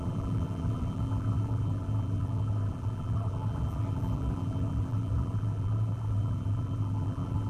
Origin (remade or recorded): remade